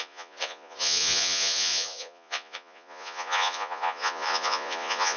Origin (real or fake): fake